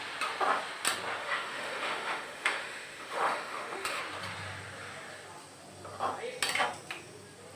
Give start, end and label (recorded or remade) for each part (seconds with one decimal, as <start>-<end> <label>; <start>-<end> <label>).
0.0-1.2 recorded; 1.2-4.0 remade; 4.0-7.6 recorded